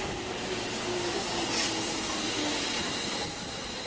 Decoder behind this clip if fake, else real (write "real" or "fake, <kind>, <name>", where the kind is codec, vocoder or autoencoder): real